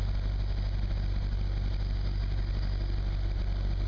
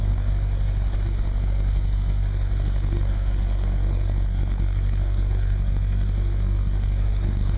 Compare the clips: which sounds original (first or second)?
first